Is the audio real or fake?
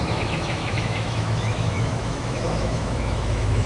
fake